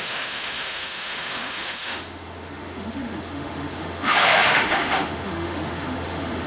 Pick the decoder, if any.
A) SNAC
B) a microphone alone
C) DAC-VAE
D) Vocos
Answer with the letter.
C